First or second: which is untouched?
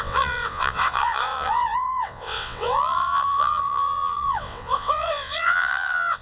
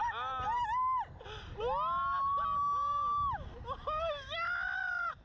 second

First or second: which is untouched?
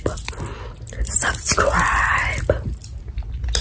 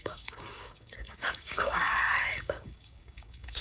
first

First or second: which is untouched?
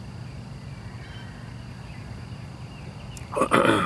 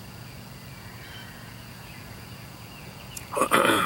first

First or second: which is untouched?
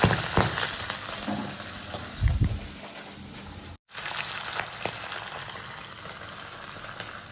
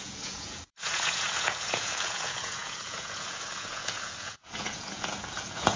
first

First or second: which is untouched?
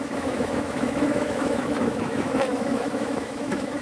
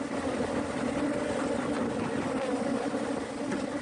second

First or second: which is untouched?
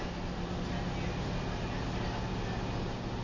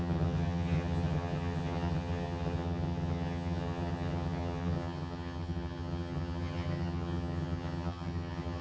first